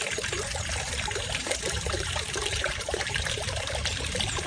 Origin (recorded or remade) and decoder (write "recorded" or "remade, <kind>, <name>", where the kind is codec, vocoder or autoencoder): remade, vocoder, BigVGAN v2